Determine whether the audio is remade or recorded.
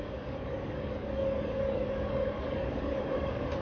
remade